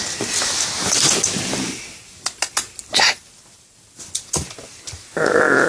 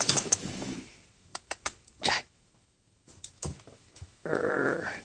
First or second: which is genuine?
first